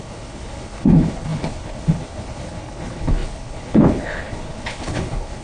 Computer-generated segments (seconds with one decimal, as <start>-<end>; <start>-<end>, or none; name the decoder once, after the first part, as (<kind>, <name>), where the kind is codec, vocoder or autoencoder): 0.0-5.4 (codec, HILCodec)